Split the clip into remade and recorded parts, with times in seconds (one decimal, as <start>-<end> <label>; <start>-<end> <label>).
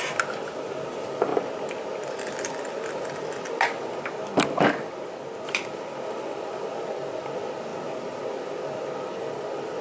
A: 0.0-1.3 recorded; 1.3-3.5 remade; 3.5-7.7 recorded; 7.7-8.8 remade; 8.8-9.8 recorded